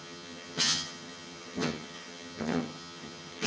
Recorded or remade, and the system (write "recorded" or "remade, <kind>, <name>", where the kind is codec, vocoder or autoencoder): remade, vocoder, HiFi-GAN